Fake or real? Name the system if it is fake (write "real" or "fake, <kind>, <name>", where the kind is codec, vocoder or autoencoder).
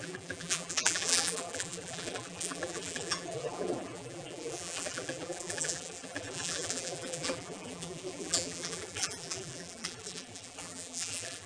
fake, vocoder, BigVGAN v2